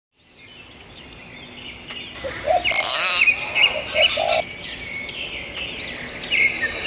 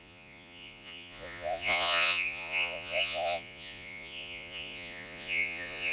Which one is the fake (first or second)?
second